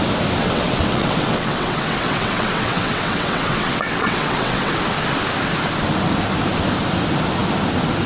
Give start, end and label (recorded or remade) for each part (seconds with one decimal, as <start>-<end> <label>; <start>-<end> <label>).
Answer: 0.0-0.4 recorded; 0.4-4.7 remade; 4.7-8.1 recorded